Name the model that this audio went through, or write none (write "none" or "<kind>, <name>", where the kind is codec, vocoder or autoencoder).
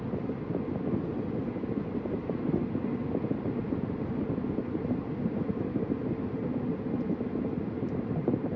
none